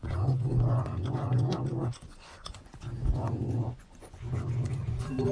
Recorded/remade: remade